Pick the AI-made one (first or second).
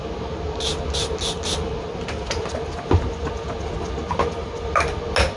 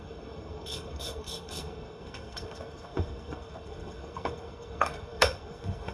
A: second